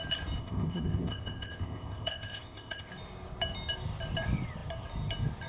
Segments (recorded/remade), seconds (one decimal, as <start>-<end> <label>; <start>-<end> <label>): 0.0-0.4 recorded; 0.4-2.9 remade; 2.9-5.5 recorded